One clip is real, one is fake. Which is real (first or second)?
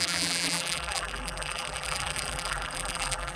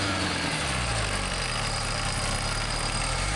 second